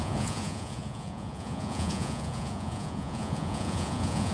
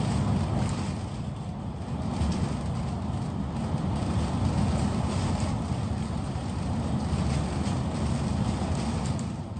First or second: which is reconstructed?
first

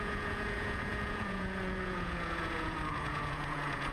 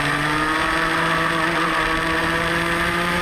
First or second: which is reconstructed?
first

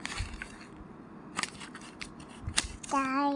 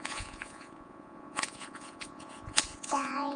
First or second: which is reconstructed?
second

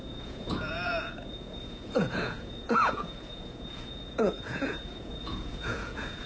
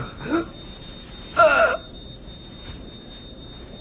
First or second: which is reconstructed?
first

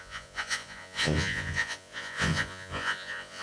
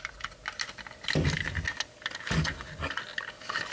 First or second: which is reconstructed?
first